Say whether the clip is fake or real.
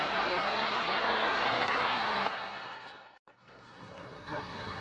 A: fake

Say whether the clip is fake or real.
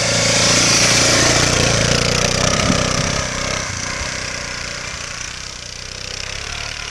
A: fake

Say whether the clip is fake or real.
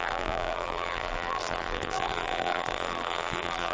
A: fake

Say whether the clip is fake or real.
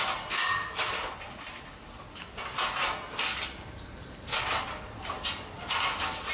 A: real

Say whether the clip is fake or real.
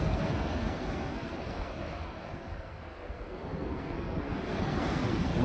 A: fake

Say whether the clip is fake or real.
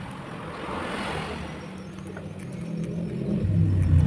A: real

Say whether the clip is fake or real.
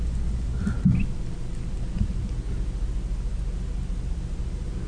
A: real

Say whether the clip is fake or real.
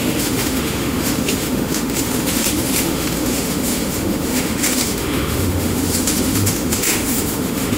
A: fake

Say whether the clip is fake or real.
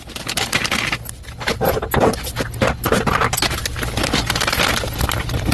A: real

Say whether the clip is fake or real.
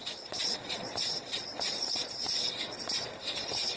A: fake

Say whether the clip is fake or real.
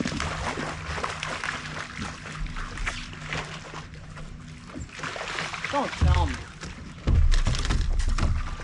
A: real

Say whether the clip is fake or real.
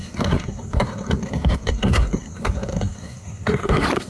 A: fake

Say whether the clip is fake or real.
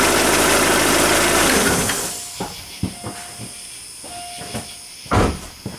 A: real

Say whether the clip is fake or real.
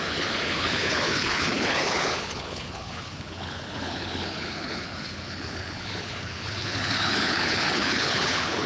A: fake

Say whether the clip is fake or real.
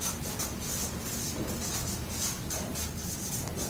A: real